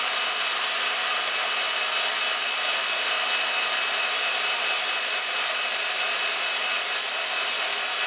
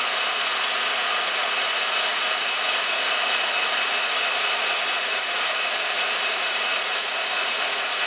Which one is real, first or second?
first